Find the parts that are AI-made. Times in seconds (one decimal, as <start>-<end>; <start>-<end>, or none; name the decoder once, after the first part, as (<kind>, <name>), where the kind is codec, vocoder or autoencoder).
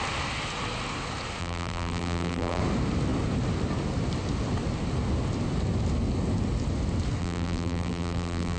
1.4-2.6 (vocoder, BigVGAN v2); 7.2-8.6